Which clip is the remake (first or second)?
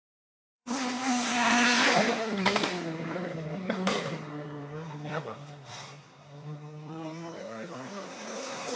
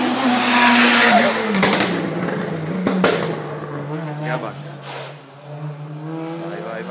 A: first